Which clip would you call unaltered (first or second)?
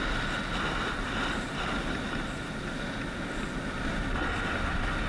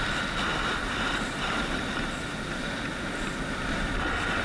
first